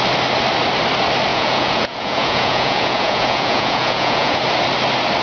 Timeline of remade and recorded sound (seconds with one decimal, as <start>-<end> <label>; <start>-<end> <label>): 0.0-1.3 recorded; 1.3-4.4 remade; 4.4-5.2 recorded